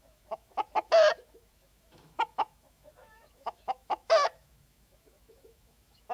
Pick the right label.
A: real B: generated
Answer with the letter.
B